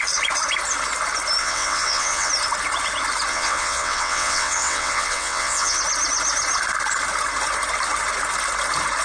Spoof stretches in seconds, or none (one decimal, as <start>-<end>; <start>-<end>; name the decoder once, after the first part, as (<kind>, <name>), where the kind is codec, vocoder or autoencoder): 1.4-2.3 (vocoder, WaveNeXt); 3.3-5.8